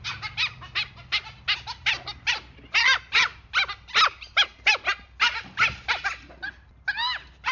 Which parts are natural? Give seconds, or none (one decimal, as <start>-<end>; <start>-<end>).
0.0-7.5